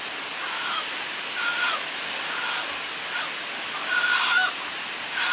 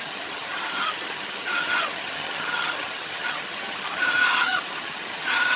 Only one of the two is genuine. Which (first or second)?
first